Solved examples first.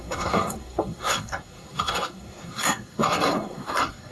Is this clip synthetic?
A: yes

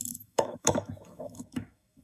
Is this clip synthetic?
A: yes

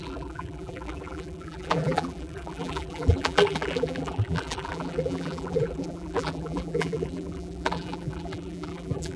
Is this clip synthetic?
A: yes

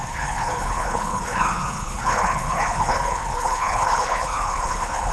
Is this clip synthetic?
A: yes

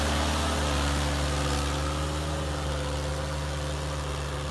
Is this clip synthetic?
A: no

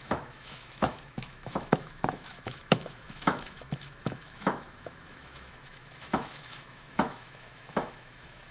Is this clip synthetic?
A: yes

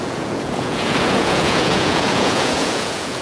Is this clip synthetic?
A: yes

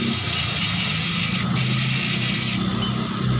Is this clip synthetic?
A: no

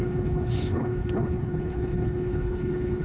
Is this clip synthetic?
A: yes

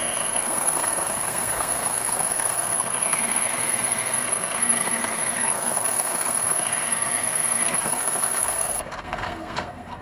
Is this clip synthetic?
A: yes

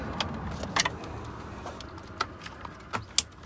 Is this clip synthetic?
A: no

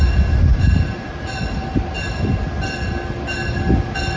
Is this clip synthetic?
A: no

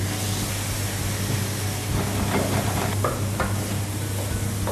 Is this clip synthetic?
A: no